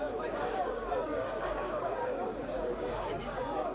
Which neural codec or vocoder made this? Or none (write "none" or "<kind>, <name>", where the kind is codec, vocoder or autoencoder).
codec, DAC